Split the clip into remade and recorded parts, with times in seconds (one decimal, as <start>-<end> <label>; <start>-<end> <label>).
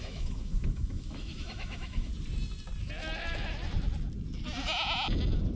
0.0-2.1 remade; 2.1-5.6 recorded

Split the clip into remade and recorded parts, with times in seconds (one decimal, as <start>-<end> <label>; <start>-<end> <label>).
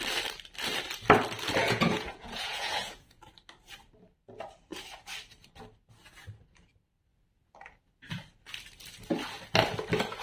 0.0-1.6 recorded; 1.6-3.2 remade; 3.2-10.2 recorded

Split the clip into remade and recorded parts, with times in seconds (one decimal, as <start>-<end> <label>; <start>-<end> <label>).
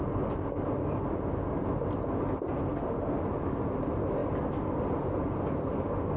0.0-6.2 recorded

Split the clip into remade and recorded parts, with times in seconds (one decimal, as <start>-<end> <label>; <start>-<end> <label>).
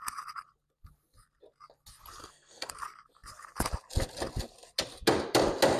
0.0-2.2 recorded; 2.2-2.7 remade; 2.7-5.8 recorded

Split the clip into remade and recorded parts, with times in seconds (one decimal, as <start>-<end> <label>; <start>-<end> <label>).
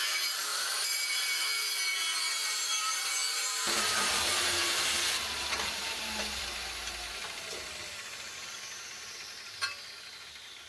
0.0-0.5 recorded; 0.5-1.4 remade; 1.4-2.4 recorded; 2.4-6.4 remade; 6.4-10.7 recorded